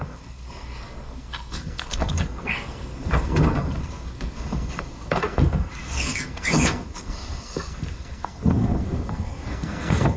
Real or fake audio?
fake